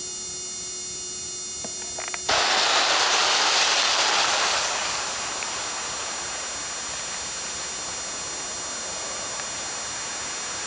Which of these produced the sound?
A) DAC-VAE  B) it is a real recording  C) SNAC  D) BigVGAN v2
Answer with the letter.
B